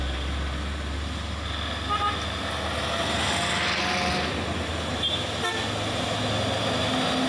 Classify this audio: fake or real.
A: real